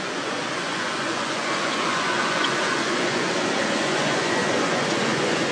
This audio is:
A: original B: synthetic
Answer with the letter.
B